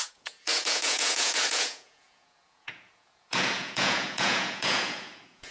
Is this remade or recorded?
remade